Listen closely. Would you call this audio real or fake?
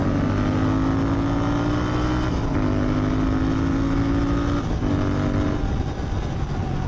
real